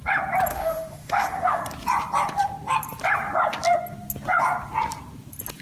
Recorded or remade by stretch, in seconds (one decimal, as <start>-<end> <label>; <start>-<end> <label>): 0.0-0.5 recorded; 0.5-1.6 remade; 1.6-5.6 recorded